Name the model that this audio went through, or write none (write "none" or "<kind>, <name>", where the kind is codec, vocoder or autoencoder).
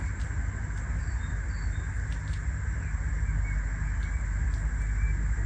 none